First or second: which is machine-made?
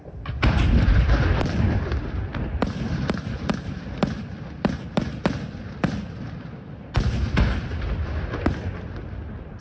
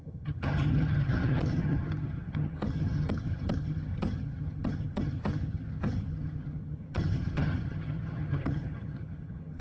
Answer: second